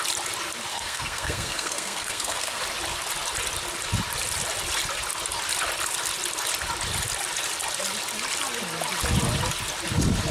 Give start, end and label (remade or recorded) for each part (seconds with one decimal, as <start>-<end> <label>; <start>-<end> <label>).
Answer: 0.0-0.7 recorded; 0.7-2.6 remade; 2.6-10.3 recorded